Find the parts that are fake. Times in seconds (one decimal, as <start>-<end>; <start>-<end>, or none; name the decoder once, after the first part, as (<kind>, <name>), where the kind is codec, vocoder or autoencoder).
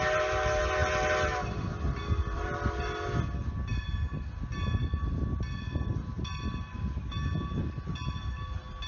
none